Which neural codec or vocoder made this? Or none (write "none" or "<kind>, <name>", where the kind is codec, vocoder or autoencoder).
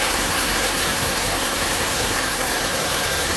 codec, SNAC